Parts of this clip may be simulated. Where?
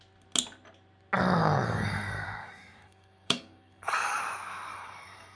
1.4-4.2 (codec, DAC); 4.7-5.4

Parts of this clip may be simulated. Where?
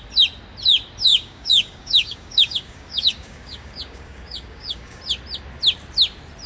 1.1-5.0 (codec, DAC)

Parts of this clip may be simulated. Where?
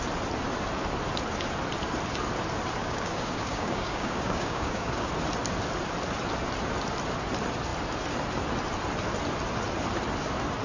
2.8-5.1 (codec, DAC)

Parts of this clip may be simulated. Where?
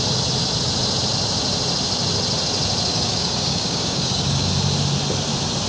2.9-4.5 (codec, DAC)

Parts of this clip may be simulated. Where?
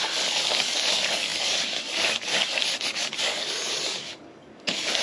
0.0-5.0 (codec, DAC)